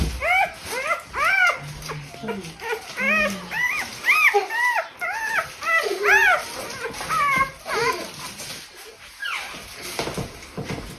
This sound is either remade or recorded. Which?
recorded